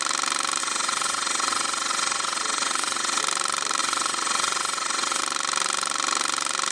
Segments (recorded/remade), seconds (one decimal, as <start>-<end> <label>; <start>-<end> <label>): 0.0-0.6 recorded; 0.6-3.2 remade; 3.2-3.8 recorded; 3.8-5.2 remade; 5.2-6.7 recorded